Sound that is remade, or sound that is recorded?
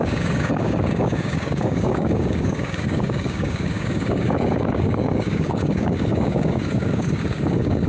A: remade